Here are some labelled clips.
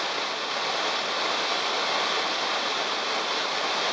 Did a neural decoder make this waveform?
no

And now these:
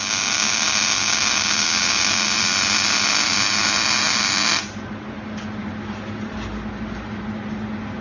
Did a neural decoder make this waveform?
no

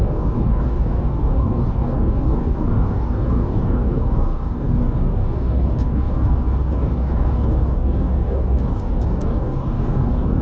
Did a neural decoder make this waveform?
yes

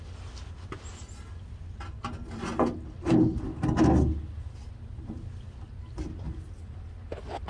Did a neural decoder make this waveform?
no